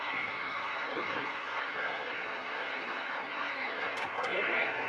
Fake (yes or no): yes